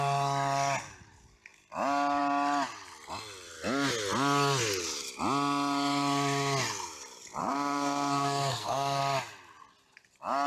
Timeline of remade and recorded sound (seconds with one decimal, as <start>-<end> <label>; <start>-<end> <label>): 0.0-7.4 recorded; 7.4-9.0 remade; 9.0-10.5 recorded